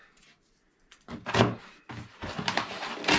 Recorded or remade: recorded